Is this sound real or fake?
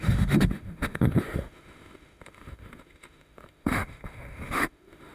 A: fake